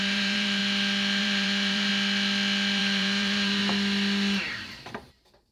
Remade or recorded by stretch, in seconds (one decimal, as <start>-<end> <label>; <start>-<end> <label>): 0.0-0.6 remade; 0.6-1.2 recorded; 1.2-1.9 remade; 1.9-2.8 recorded; 2.8-3.6 remade; 3.6-4.4 recorded; 4.4-5.5 remade